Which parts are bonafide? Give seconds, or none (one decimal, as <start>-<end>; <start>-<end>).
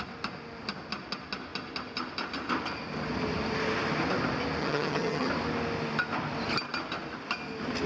0.0-4.6; 5.3-7.9